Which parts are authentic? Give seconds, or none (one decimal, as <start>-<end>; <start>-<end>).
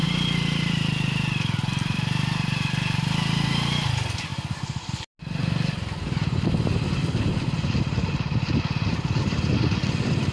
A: 3.0-4.3; 4.9-10.3